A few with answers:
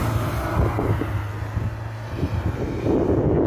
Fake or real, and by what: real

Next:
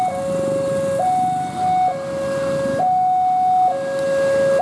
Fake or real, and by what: real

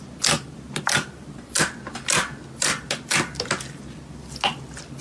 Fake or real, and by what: real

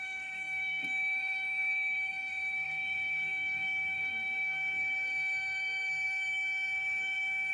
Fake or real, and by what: fake, codec, SNAC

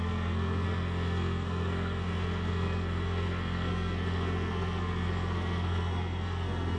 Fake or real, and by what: fake, codec, SNAC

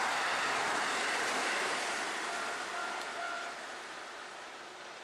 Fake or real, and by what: fake, vocoder, BigVGAN v2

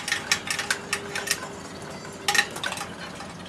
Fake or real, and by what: real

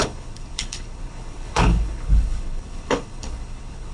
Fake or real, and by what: fake, codec, HILCodec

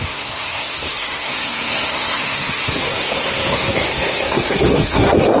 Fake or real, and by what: fake, codec, SNAC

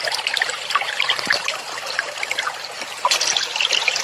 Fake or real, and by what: real